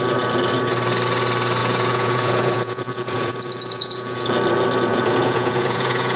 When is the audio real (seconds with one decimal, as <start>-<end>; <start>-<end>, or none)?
0.0-1.6; 4.3-4.9